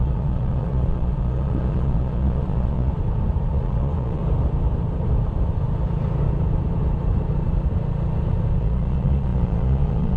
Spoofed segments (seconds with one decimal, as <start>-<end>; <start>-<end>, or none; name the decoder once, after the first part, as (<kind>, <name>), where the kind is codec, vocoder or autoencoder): 0.0-2.9 (vocoder, Vocos); 3.5-4.2; 8.6-10.2